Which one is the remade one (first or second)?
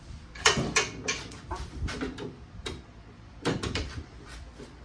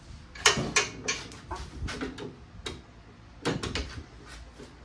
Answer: first